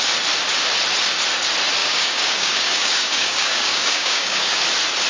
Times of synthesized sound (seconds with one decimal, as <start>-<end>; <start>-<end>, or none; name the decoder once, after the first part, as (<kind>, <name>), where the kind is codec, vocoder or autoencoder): 1.8-4.6 (codec, DAC)